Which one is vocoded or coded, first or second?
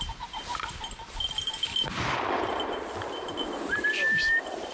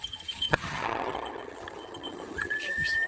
second